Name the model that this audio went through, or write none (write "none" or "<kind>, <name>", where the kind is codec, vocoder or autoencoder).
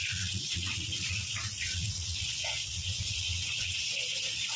vocoder, Vocos